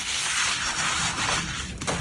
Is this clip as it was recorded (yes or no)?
yes